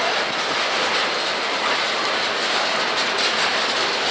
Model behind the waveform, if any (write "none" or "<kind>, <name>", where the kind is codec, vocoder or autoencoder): none